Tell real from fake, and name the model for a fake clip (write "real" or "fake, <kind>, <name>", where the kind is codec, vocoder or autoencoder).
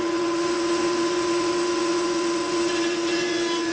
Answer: fake, vocoder, Vocos